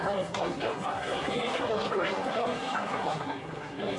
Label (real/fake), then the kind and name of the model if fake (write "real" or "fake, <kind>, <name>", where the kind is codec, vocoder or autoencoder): fake, codec, SNAC